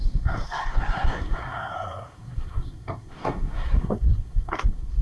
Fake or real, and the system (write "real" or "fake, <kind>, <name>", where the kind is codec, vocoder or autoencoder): fake, codec, SNAC